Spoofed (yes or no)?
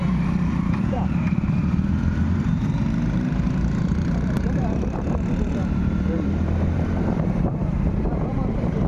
yes